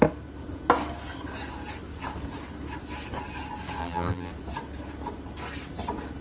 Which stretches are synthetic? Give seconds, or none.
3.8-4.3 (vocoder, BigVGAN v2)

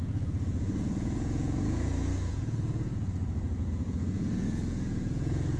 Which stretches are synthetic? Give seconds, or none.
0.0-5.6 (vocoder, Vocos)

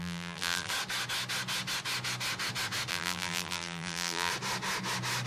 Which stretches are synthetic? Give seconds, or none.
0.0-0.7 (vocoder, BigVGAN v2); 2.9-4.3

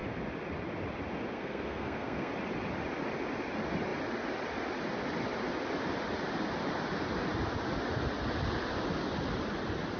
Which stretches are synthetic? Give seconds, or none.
1.3-2.3 (codec, SNAC)

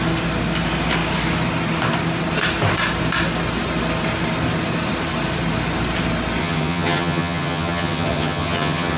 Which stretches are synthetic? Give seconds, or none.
6.4-9.0 (vocoder, HiFi-GAN)